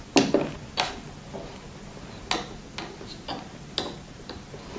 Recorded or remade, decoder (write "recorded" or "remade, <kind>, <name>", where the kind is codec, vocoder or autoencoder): recorded